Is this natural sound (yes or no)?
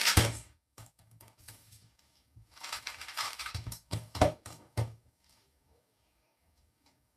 no